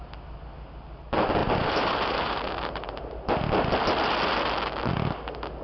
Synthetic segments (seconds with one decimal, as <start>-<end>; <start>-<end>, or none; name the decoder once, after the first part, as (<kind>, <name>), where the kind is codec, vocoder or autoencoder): 1.4-3.3 (vocoder, BigVGAN v2)